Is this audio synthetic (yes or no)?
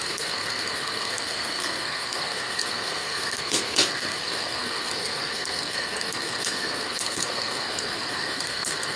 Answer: yes